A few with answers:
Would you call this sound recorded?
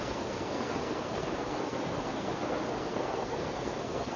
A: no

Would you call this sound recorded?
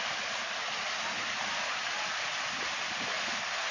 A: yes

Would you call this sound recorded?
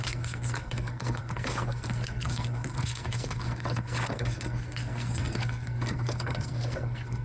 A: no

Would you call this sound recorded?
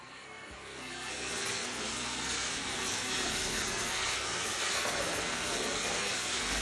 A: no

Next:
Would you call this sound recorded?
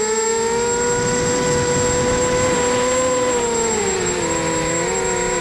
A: yes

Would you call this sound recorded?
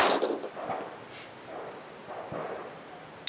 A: yes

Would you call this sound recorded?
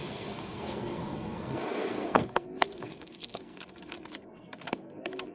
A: no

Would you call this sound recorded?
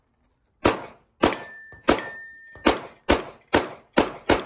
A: yes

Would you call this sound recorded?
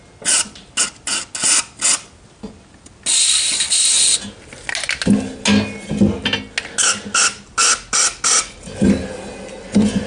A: yes